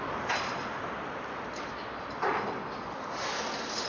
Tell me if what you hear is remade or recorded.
recorded